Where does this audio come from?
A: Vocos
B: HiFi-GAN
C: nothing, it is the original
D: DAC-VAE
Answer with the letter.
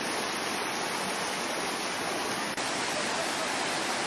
C